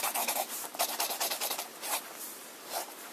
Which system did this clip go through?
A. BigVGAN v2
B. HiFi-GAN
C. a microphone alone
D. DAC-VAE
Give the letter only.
A